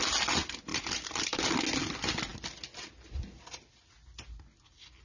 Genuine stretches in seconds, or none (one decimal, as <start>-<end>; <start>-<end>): 0.0-0.7; 1.5-5.0